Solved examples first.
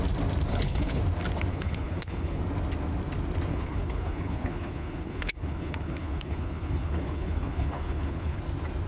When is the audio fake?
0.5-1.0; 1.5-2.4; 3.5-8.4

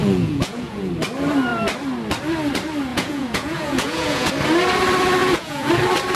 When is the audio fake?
0.0-0.9; 2.9-4.3; 5.2-5.7

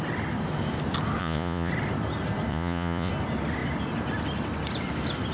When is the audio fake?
1.2-1.7; 2.5-3.1